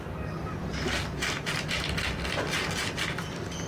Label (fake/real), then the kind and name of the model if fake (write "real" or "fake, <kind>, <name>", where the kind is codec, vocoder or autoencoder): real